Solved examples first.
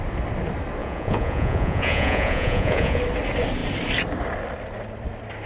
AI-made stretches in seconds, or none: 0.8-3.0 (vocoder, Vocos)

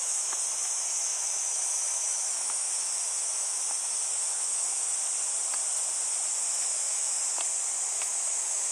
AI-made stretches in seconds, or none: 0.0-4.9 (autoencoder, DAC-VAE); 6.2-7.2; 8.0-8.7

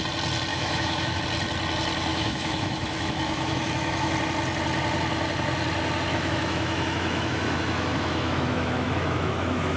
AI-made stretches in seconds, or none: 0.5-1.2 (autoencoder, DAC-VAE); 2.1-4.1; 6.1-9.8

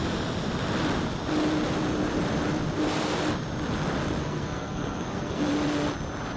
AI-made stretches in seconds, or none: 4.2-5.5 (codec, SNAC)